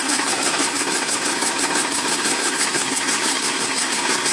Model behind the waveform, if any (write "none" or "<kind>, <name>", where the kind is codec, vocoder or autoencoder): codec, SNAC